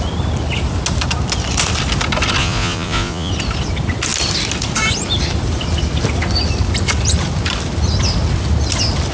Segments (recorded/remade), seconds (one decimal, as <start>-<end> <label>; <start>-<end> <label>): 0.0-2.4 recorded; 2.4-3.3 remade; 3.3-9.1 recorded